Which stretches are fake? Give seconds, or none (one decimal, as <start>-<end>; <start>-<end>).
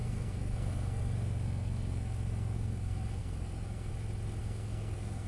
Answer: 0.0-3.9; 4.4-5.3